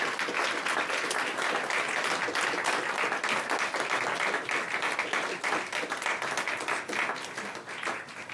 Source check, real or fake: real